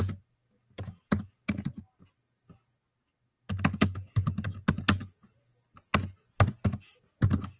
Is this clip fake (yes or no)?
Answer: no